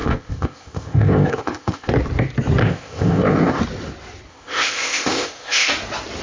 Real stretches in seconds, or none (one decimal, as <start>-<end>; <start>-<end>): 1.9-2.6; 3.6-4.3; 5.7-6.2